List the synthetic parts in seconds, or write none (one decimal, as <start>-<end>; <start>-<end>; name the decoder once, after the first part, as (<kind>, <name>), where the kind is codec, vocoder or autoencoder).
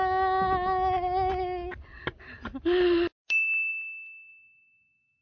none